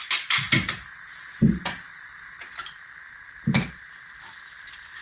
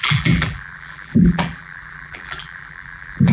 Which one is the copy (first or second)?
second